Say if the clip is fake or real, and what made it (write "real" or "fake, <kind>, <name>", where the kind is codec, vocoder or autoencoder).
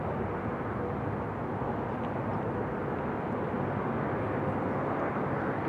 real